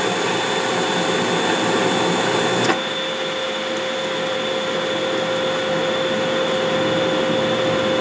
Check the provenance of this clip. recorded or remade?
recorded